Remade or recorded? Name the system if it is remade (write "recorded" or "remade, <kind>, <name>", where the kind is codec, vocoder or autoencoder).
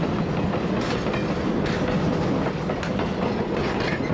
recorded